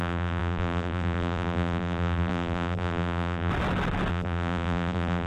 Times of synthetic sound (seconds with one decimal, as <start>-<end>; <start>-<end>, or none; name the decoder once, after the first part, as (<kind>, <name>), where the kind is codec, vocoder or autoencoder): 0.0-3.5 (vocoder, BigVGAN v2); 4.1-5.3